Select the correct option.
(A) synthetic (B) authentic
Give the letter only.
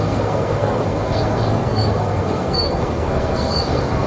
A